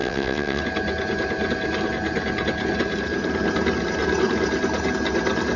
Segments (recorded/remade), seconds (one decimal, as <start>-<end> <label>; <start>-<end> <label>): 0.0-0.6 remade; 0.6-5.6 recorded